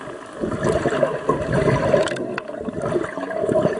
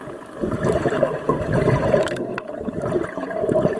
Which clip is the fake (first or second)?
second